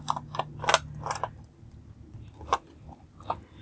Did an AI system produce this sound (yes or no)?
no